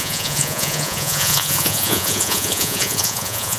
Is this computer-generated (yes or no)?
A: yes